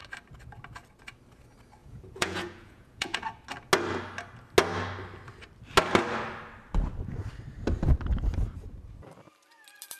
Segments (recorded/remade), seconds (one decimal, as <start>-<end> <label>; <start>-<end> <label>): 0.0-1.8 recorded; 1.8-3.2 remade; 3.2-10.0 recorded